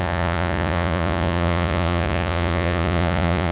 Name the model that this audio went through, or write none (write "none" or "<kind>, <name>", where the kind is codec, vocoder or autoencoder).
vocoder, Vocos